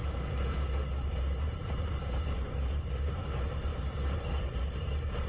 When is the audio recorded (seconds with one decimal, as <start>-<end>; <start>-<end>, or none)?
0.0-1.1